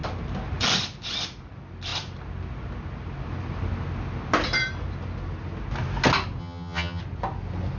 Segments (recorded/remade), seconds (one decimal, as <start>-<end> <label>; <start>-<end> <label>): 0.0-6.4 recorded; 6.4-7.0 remade; 7.0-7.8 recorded

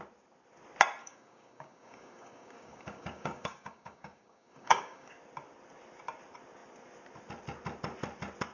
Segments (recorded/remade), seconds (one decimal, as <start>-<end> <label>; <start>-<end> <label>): 0.0-1.0 recorded; 1.0-5.1 remade; 5.1-8.5 recorded